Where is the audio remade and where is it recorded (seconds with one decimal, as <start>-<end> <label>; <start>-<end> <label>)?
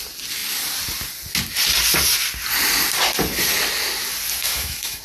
0.0-4.4 recorded; 4.4-5.0 remade